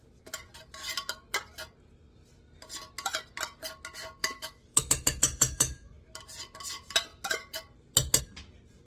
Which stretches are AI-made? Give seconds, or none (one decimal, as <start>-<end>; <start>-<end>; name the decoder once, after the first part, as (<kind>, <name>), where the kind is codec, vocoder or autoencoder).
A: 4.2-6.1 (autoencoder, DAC-VAE)